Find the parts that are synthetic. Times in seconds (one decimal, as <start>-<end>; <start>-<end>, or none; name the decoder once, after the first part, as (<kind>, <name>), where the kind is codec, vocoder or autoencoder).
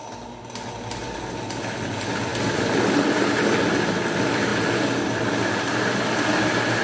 none